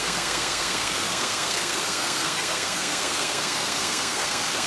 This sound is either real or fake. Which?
fake